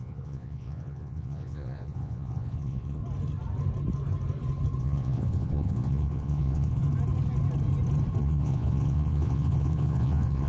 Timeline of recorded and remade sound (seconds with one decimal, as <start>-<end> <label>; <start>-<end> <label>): 0.0-3.0 remade; 3.0-4.8 recorded; 4.8-6.8 remade; 6.8-8.2 recorded; 8.2-10.5 remade